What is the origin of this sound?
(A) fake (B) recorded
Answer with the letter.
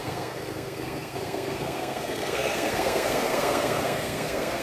A